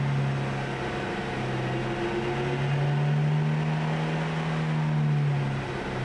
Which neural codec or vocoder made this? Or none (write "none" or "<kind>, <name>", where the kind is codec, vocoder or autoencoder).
none